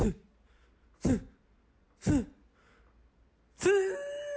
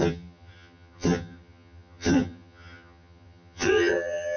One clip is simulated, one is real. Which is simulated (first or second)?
second